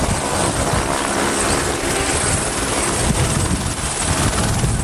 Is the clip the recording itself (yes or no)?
yes